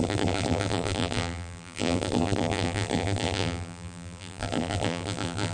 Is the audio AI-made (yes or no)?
yes